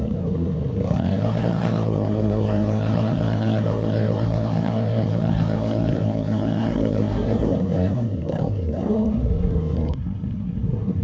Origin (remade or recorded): remade